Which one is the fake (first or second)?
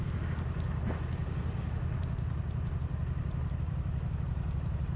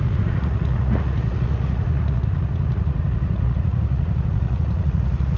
second